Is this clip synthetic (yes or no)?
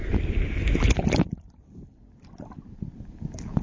no